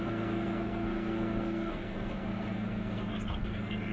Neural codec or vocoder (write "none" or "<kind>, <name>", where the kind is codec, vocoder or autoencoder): codec, SNAC